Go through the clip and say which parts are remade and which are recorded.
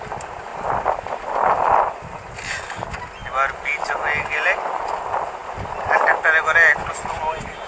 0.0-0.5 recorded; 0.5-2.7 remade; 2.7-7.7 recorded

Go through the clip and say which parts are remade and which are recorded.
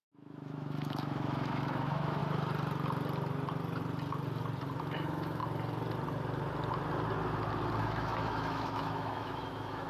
0.0-2.2 remade; 2.2-4.8 recorded; 4.8-5.4 remade; 5.4-7.8 recorded; 7.8-9.9 remade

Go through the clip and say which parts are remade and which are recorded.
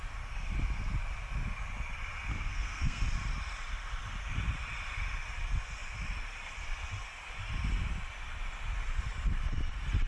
0.0-2.3 recorded; 2.3-3.0 remade; 3.0-10.1 recorded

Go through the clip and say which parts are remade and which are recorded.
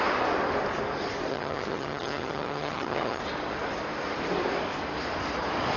0.0-1.3 recorded; 1.3-3.2 remade; 3.2-5.8 recorded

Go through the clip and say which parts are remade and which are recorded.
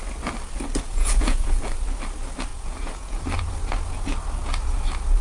0.0-0.9 recorded; 0.9-1.6 remade; 1.6-2.5 recorded; 2.5-3.2 remade; 3.2-5.2 recorded